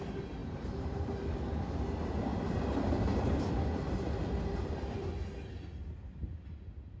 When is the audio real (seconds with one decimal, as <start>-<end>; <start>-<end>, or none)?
0.0-0.4; 1.1-7.0